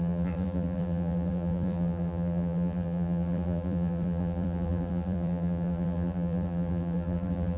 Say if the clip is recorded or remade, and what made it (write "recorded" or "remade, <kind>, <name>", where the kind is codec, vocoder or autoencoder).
remade, vocoder, BigVGAN v2